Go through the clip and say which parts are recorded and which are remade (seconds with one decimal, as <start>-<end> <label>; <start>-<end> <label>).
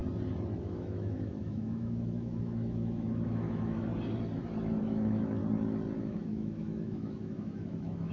0.0-0.6 recorded; 0.6-3.9 remade; 3.9-4.8 recorded; 4.8-5.4 remade; 5.4-6.0 recorded; 6.0-8.1 remade